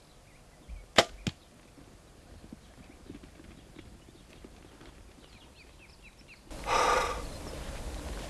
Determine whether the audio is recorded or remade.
recorded